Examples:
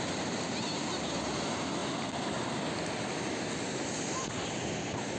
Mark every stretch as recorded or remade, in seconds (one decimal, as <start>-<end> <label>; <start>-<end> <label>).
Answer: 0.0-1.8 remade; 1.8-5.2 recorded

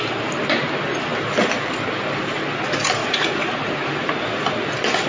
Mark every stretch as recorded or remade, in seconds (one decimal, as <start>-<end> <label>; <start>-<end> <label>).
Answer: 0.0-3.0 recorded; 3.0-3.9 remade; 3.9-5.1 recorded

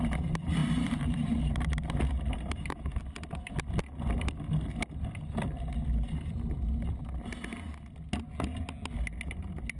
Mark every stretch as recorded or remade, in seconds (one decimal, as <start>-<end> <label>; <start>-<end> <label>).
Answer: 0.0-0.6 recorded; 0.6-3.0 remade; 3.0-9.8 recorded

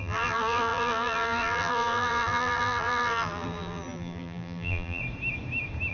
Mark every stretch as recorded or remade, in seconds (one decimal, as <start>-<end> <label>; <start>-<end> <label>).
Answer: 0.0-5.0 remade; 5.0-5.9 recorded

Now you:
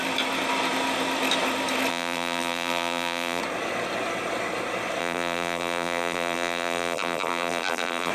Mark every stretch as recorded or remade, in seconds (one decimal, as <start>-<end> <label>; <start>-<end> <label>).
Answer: 0.0-1.9 recorded; 1.9-3.4 remade; 3.4-5.0 recorded; 5.0-8.1 remade